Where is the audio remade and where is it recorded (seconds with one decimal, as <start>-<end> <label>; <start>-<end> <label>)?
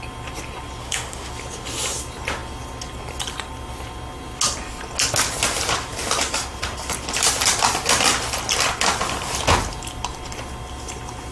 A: 0.0-0.8 recorded; 0.8-1.3 remade; 1.3-11.3 recorded